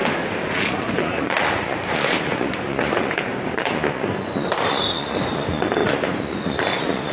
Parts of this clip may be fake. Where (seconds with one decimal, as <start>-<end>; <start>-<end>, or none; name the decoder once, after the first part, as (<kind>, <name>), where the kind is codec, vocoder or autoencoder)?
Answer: 0.6-7.1 (vocoder, Vocos)